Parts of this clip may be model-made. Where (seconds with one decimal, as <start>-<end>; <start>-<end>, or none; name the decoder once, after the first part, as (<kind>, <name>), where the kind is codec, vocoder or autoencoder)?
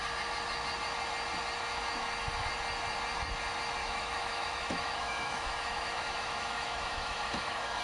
3.8-7.8 (autoencoder, DAC-VAE)